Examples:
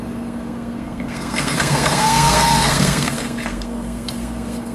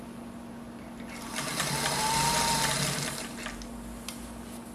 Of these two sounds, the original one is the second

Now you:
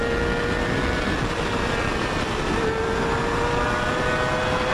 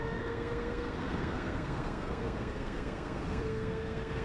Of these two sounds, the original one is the first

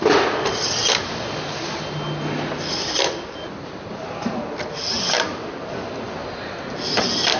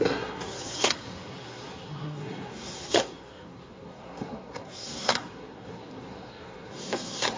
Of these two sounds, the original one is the first